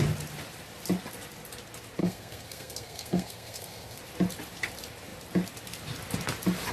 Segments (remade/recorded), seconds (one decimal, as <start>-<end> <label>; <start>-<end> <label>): 0.0-2.0 recorded; 2.0-4.0 remade; 4.0-6.7 recorded